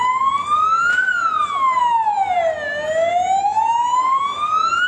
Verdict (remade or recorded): recorded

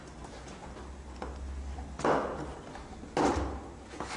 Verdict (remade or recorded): recorded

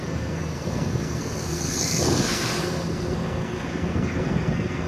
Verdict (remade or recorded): remade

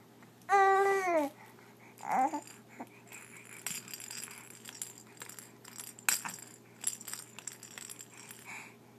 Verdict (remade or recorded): recorded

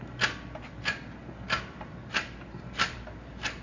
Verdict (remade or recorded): recorded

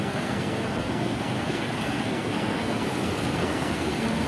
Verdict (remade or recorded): remade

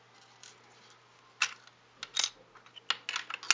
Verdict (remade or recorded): recorded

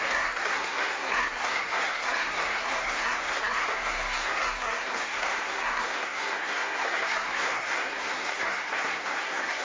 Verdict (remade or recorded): remade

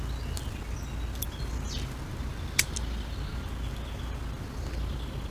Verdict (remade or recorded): recorded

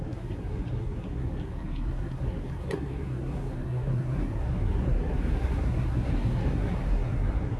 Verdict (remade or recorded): remade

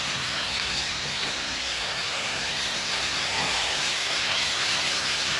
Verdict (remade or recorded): remade